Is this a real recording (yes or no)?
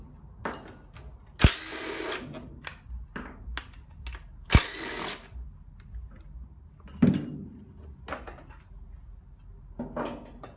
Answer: yes